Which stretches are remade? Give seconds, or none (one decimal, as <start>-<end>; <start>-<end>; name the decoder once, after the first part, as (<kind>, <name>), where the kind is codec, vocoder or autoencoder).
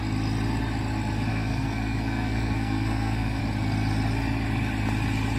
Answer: 1.3-3.4 (codec, SNAC)